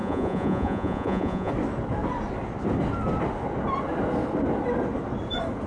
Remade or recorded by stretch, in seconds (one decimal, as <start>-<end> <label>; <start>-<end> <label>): 0.0-1.5 remade; 1.5-5.7 recorded